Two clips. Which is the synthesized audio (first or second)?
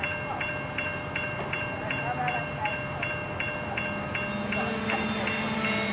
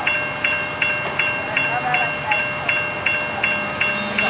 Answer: first